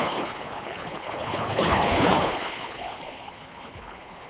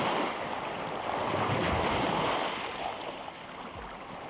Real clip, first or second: second